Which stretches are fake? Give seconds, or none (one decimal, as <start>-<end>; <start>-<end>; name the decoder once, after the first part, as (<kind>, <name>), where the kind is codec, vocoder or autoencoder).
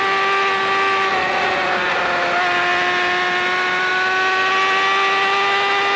1.1-2.0 (vocoder, Vocos)